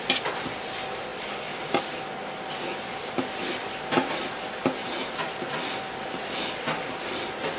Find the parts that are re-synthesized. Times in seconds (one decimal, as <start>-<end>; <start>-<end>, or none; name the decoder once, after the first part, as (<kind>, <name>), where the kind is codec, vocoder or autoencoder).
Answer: 4.8-5.5 (vocoder, BigVGAN v2)